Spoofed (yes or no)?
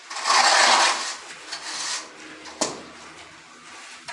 no